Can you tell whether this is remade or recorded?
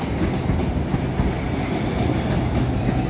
recorded